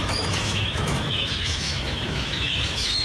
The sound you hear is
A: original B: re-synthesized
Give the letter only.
B